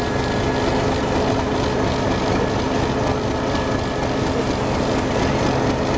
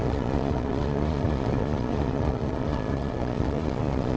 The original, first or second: first